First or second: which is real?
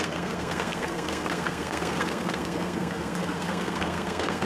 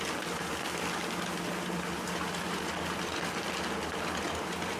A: second